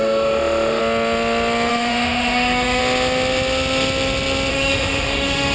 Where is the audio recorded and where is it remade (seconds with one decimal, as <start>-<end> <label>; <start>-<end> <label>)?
0.0-0.8 remade; 0.8-1.7 recorded; 1.7-2.8 remade; 2.8-4.5 recorded; 4.5-5.5 remade